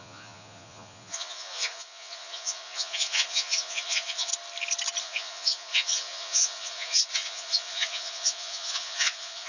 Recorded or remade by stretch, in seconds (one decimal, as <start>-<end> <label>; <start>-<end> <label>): 0.0-4.3 remade; 4.3-5.0 recorded; 5.0-9.5 remade